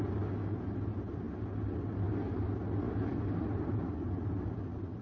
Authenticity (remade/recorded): recorded